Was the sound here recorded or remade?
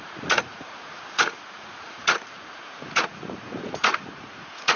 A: remade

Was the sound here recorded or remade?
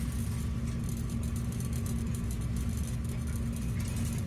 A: recorded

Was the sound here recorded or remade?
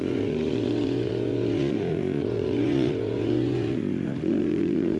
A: remade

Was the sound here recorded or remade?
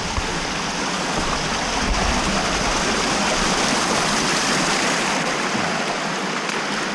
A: recorded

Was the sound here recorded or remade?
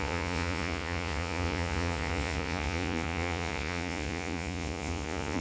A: remade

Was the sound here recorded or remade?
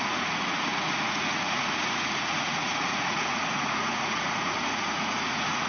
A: remade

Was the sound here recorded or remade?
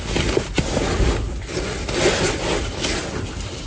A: recorded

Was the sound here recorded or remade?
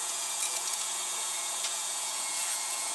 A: remade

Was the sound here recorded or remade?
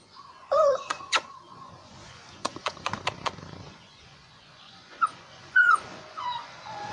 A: remade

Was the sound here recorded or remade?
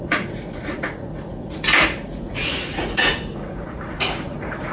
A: remade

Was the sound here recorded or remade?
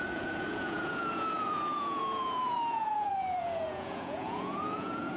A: remade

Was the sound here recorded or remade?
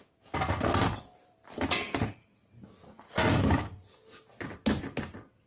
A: recorded